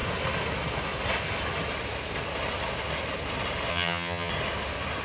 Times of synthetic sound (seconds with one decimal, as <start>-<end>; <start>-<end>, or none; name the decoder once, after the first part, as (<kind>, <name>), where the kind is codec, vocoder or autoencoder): 3.7-4.3 (vocoder, HiFi-GAN)